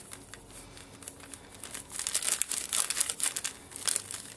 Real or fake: real